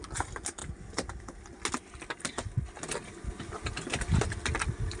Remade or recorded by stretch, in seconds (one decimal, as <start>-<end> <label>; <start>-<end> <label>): 0.0-5.0 recorded

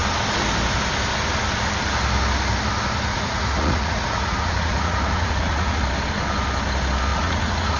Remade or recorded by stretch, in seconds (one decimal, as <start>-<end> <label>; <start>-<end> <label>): 0.0-3.1 recorded; 3.1-5.8 remade; 5.8-7.1 recorded; 7.1-7.8 remade

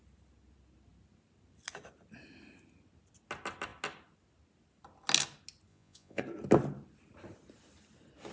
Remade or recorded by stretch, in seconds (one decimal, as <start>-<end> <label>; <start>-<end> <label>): 0.0-5.7 recorded; 5.7-6.2 remade; 6.2-8.3 recorded

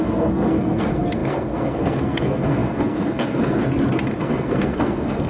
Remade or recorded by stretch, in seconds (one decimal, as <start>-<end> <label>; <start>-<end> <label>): 0.0-3.6 remade; 3.6-4.2 recorded; 4.2-5.3 remade

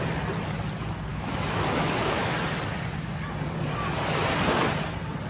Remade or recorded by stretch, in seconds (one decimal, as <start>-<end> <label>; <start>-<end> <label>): 0.0-1.1 recorded; 1.1-2.3 remade; 2.3-5.3 recorded

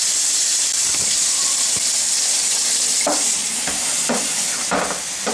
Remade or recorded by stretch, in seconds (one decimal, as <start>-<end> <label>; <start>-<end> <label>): 0.0-5.3 remade

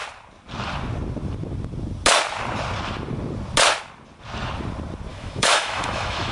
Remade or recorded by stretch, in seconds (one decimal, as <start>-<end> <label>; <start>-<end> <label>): 0.0-5.1 recorded; 5.1-6.3 remade